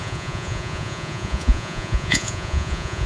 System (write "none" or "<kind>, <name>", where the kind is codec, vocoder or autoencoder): vocoder, Vocos